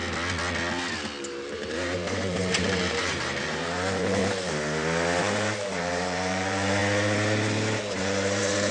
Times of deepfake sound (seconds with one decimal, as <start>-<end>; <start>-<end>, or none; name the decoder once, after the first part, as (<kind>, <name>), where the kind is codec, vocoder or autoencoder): 1.2-4.2 (vocoder, BigVGAN v2); 5.2-6.8; 8.0-8.7